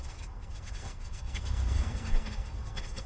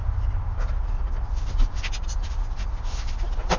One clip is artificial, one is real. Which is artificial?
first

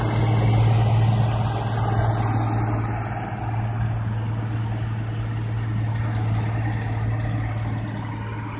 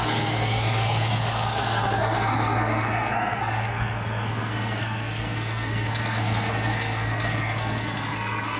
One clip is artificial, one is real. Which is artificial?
second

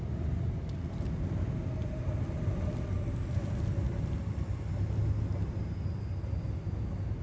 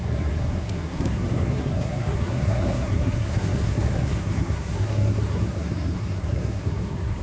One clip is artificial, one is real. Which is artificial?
second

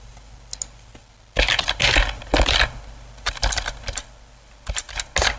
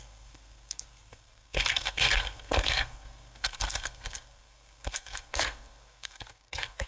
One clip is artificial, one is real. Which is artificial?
second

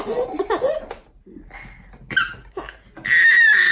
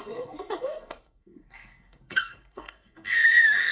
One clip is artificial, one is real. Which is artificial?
second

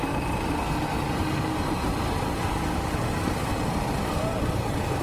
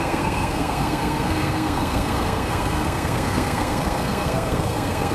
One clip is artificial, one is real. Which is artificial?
second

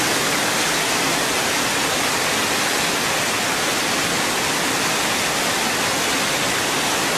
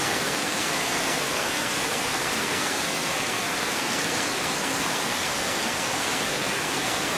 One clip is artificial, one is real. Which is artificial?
second